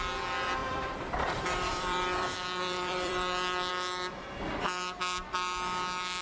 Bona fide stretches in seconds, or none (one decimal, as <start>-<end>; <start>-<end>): 0.0-0.6; 3.7-6.2